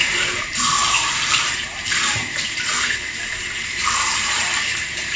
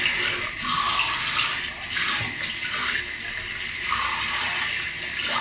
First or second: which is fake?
first